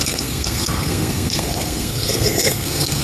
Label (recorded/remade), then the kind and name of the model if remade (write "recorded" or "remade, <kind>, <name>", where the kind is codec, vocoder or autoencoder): remade, codec, SNAC